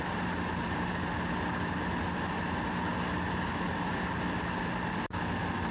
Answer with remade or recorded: recorded